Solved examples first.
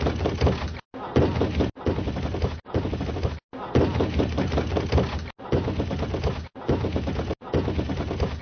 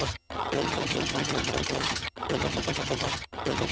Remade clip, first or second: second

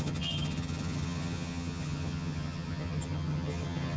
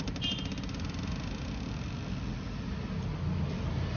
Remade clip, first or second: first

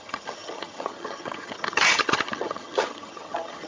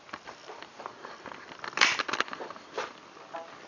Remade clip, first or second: first